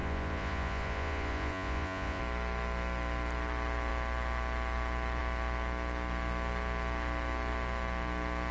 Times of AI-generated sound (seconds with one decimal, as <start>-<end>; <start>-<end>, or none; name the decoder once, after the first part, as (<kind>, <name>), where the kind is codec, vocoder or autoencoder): 0.0-2.2 (vocoder, Vocos)